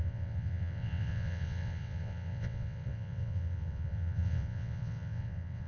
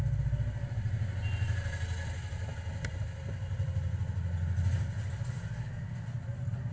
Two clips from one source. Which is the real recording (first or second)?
second